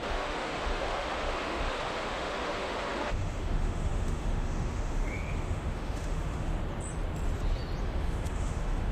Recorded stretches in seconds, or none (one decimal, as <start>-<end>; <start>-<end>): 6.6-7.8